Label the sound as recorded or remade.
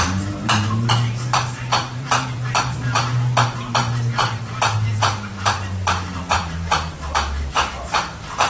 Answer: remade